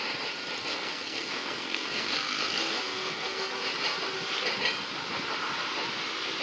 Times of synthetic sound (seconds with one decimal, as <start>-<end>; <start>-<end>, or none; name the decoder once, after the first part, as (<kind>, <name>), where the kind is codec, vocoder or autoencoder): 0.7-3.5 (codec, SNAC)